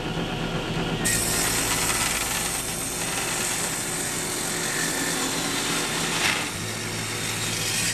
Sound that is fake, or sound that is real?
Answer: real